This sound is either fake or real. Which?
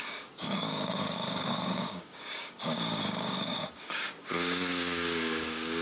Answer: fake